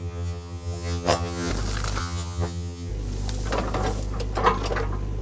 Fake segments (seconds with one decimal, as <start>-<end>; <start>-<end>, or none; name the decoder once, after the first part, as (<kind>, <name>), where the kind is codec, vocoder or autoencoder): 0.0-1.5 (vocoder, HiFi-GAN); 2.0-2.9